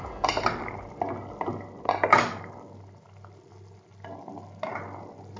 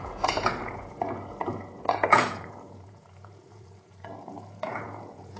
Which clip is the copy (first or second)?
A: second